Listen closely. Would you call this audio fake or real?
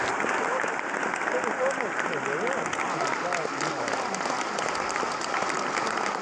real